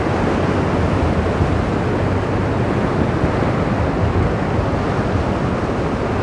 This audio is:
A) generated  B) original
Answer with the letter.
B